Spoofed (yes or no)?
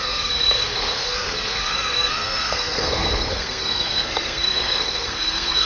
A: yes